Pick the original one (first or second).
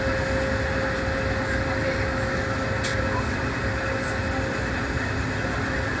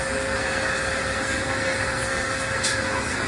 first